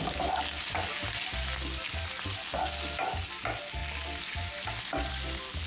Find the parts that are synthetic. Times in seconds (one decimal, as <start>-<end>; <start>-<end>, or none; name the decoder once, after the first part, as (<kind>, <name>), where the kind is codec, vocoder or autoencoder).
none